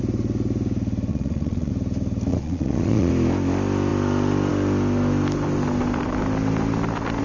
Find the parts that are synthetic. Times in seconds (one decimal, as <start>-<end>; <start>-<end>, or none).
1.1-1.7; 2.3-3.1